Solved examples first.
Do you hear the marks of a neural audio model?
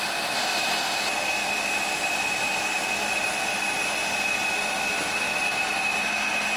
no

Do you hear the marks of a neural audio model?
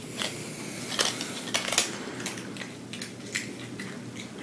no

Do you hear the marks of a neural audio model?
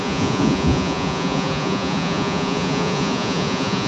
yes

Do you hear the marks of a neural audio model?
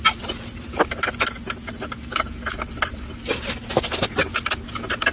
no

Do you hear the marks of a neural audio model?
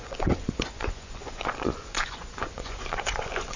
yes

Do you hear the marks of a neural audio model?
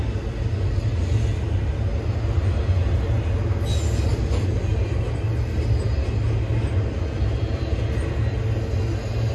no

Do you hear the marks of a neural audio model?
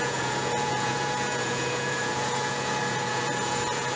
yes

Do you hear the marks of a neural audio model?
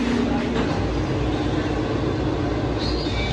no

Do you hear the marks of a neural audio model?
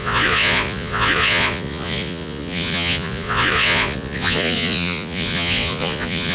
yes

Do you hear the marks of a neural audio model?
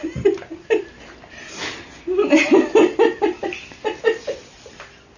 no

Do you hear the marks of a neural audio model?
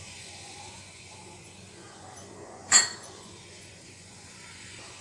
yes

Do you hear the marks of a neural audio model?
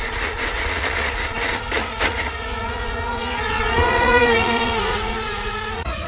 yes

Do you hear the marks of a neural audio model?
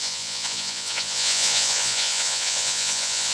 yes